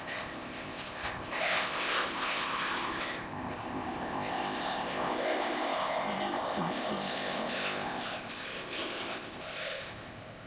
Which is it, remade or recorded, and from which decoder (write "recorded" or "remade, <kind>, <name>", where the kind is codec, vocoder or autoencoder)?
remade, codec, ZipCodec